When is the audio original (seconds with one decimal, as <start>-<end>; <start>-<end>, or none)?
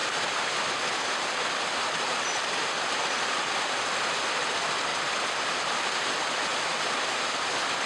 3.9-4.9; 5.5-6.5; 7.2-7.9